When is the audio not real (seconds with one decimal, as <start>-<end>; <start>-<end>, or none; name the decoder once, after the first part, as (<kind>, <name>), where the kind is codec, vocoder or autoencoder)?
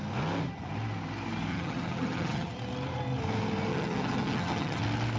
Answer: 1.5-2.5 (vocoder, HiFi-GAN); 3.7-4.8